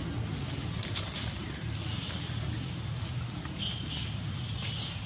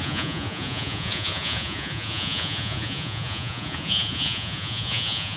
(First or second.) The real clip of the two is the first